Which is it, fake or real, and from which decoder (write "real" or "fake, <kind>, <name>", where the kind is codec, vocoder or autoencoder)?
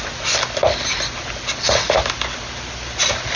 real